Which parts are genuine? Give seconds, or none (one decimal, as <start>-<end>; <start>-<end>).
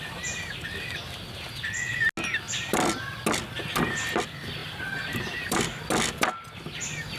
0.0-4.6; 5.8-7.2